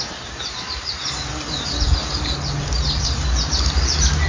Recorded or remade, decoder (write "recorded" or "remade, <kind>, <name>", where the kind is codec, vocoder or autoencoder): recorded